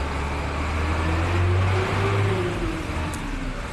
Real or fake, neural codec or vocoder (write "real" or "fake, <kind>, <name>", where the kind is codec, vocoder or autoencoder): real